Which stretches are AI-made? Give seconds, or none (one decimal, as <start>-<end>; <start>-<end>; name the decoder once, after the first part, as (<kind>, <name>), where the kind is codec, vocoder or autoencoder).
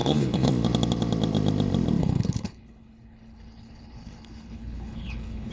0.0-0.5 (codec, HILCodec); 2.0-5.5